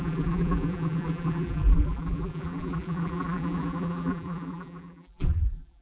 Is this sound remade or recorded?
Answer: remade